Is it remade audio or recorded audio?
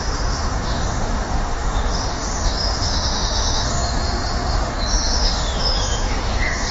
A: remade